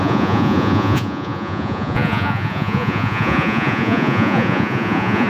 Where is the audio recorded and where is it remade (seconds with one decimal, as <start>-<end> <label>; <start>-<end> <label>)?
0.0-5.3 remade